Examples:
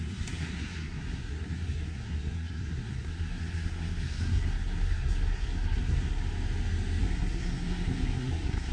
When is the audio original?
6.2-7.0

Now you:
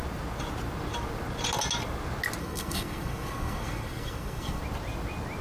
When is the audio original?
0.0-2.4; 4.6-5.4

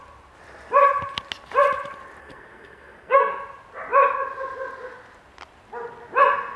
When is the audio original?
0.0-2.2; 3.3-6.6

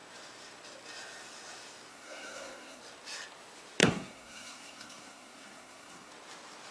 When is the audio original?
0.0-1.9; 2.8-3.8; 6.1-6.7

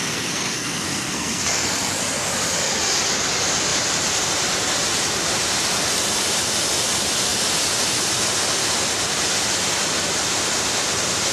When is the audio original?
2.3-11.3

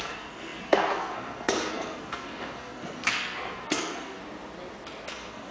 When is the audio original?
4.2-5.1

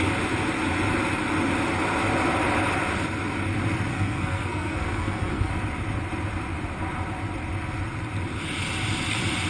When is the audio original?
0.0-3.9; 5.5-9.5

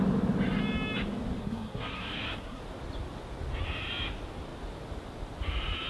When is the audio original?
0.0-1.4; 2.6-5.9